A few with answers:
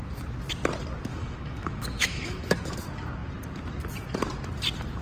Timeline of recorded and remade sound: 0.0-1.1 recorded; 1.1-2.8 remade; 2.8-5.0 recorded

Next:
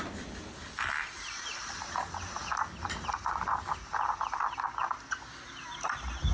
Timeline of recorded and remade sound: 0.0-6.3 recorded

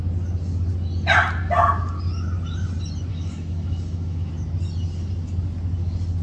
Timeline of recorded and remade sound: 0.0-3.1 recorded; 3.1-4.3 remade; 4.3-6.2 recorded

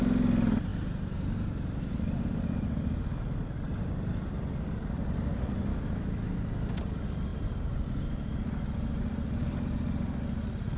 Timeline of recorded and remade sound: 0.0-5.7 recorded; 5.7-6.3 remade; 6.3-10.8 recorded

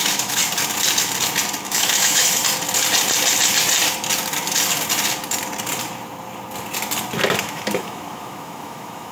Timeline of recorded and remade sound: 0.0-0.4 remade; 0.4-1.6 recorded; 1.6-2.4 remade; 2.4-7.4 recorded; 7.4-9.1 remade

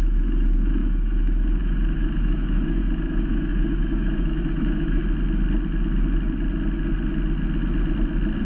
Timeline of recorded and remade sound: 0.0-5.0 remade; 5.0-8.4 recorded